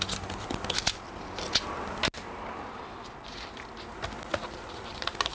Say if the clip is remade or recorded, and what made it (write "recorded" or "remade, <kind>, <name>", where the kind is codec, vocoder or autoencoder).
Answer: recorded